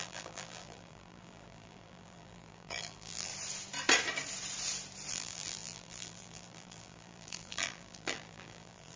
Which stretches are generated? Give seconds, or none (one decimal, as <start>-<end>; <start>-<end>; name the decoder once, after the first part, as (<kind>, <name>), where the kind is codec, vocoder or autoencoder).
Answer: 0.0-3.3 (vocoder, BigVGAN v2); 5.1-9.0

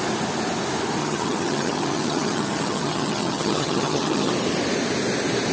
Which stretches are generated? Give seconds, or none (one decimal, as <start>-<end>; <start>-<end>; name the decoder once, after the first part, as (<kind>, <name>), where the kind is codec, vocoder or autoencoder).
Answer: 1.0-4.3 (vocoder, HiFi-GAN)

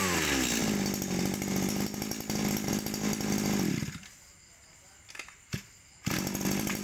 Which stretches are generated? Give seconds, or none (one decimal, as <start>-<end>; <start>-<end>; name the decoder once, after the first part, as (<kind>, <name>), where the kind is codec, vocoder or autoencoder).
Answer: none

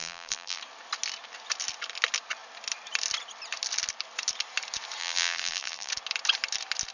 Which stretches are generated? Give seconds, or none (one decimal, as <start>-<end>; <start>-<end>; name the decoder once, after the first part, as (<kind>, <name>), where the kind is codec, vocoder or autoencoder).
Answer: 0.0-0.6 (vocoder, BigVGAN v2); 5.0-5.9

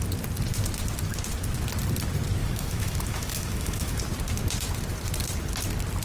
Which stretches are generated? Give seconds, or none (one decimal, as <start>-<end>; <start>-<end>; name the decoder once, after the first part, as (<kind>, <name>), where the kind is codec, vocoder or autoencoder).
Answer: 2.4-4.0 (autoencoder, DAC-VAE)

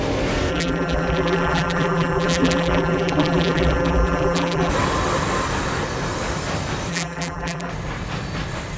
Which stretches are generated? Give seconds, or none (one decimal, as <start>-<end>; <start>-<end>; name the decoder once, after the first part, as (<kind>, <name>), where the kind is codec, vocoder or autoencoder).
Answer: 0.5-4.7 (vocoder, BigVGAN v2); 6.9-7.7

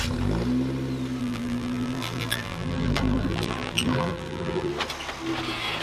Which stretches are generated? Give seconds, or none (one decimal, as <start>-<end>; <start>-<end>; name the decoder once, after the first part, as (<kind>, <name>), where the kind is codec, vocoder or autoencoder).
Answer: 1.2-4.7 (vocoder, BigVGAN v2)

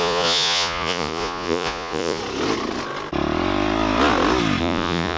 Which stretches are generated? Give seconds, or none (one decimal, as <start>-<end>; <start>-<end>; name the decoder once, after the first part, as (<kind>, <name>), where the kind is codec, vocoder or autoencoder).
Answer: 0.0-2.2 (vocoder, Vocos); 4.6-5.2